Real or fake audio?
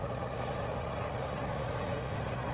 fake